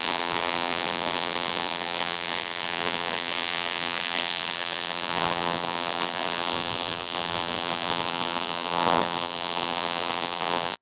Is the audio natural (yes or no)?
no